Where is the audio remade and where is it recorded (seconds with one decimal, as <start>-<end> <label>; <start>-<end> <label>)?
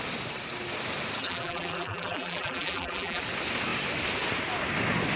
0.0-1.2 recorded; 1.2-3.2 remade; 3.2-5.2 recorded